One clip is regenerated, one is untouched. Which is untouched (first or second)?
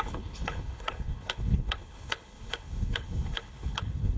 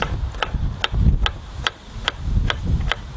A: second